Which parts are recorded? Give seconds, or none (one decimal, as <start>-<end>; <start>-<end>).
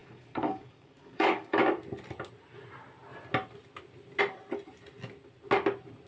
1.6-6.1